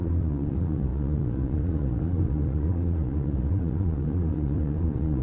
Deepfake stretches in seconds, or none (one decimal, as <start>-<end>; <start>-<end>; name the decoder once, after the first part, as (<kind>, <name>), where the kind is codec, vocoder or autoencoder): 0.0-5.2 (vocoder, Vocos)